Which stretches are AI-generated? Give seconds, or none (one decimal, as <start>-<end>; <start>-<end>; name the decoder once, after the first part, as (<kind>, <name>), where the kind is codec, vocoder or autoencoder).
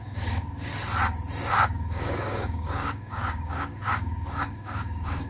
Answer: 0.0-0.7 (codec, DAC); 1.5-5.3